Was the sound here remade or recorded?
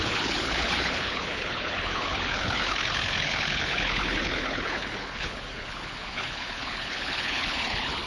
remade